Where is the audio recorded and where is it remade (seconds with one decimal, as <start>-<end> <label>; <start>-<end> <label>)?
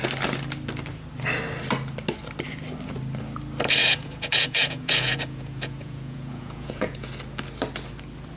0.0-3.8 recorded; 3.8-7.1 remade; 7.1-8.4 recorded